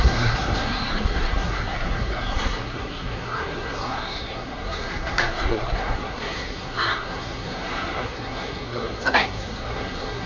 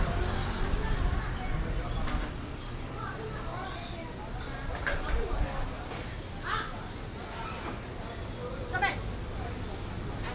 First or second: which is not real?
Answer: first